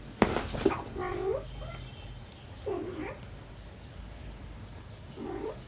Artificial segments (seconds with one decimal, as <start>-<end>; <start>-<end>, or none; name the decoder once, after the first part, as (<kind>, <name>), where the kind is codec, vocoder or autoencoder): none